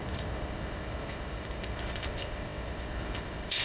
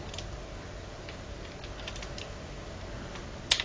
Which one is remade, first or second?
first